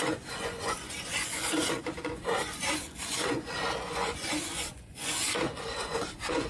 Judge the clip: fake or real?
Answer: fake